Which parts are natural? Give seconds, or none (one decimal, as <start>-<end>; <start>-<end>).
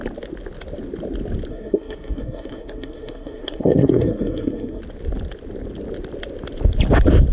0.0-1.5; 4.8-7.3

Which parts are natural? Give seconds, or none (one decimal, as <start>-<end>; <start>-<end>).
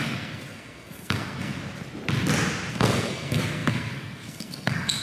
1.6-2.7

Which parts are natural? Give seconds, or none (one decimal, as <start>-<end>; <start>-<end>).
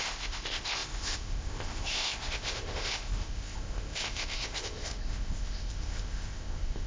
none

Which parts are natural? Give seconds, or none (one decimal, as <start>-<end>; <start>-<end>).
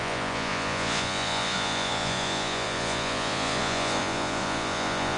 none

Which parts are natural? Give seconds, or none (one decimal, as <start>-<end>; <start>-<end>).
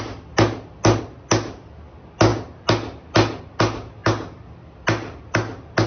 0.0-5.9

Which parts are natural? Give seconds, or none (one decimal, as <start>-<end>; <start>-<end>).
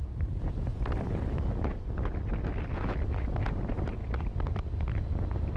0.7-3.5; 4.0-5.6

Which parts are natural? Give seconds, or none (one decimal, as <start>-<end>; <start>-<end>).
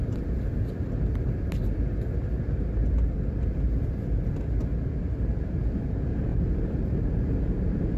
0.0-6.3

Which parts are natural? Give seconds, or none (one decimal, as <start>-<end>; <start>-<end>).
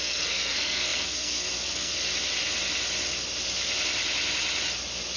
1.9-5.2